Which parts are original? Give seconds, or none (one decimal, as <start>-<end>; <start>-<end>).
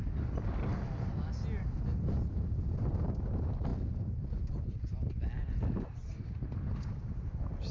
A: 0.0-7.7